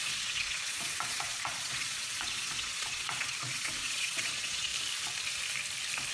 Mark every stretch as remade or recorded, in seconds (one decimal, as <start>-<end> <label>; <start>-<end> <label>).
0.0-4.7 remade; 4.7-6.1 recorded